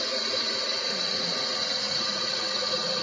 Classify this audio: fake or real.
fake